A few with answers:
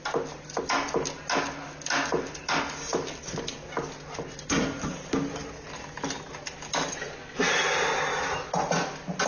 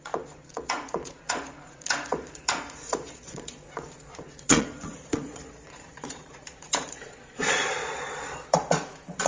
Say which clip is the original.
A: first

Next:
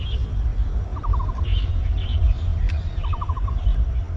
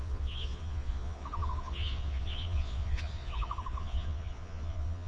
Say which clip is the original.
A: first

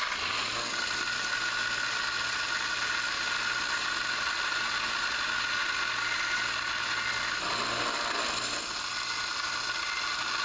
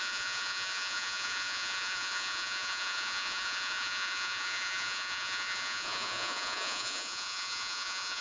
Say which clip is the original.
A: first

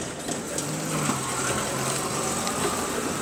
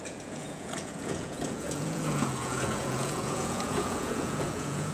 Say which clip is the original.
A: first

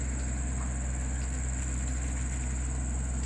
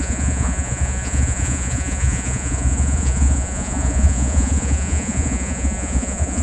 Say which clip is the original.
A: first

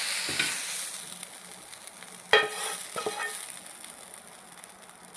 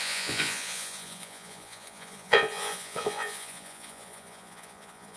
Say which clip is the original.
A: first